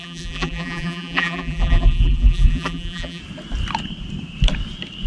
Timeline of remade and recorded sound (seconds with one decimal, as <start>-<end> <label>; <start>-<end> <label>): 0.0-3.2 remade; 3.2-5.1 recorded